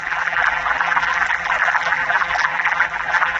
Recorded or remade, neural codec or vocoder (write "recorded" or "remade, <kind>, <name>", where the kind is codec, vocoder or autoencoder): remade, vocoder, BigVGAN v2